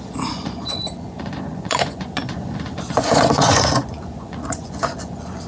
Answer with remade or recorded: remade